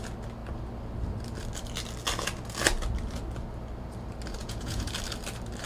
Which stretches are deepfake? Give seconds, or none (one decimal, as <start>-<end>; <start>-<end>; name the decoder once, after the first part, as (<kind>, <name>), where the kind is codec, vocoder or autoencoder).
4.4-4.9 (vocoder, Vocos)